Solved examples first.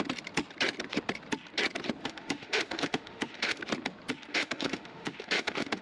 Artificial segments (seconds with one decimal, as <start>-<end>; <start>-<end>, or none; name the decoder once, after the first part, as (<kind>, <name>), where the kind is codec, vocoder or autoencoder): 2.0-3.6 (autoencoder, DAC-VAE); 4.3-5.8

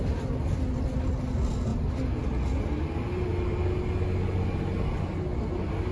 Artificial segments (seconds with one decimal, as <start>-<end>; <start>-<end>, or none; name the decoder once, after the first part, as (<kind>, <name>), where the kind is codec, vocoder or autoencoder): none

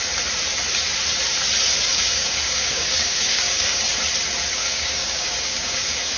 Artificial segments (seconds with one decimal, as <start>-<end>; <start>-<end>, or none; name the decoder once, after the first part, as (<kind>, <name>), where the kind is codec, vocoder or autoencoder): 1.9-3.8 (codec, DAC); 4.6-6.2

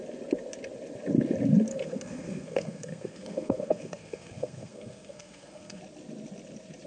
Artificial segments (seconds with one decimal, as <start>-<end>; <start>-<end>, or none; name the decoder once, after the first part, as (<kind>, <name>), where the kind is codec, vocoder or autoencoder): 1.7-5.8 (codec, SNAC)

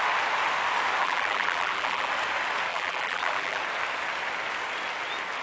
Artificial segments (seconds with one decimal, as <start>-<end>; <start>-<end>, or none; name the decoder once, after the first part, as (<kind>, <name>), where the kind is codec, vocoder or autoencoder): 1.0-2.1 (vocoder, BigVGAN v2); 2.7-3.6

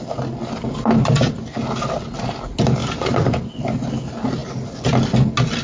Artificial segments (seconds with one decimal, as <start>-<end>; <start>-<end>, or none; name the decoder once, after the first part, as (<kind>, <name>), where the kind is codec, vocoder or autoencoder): 2.8-3.5 (vocoder, BigVGAN v2)